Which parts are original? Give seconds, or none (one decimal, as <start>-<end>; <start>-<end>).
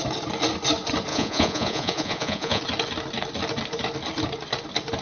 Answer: 0.0-1.1; 2.6-5.0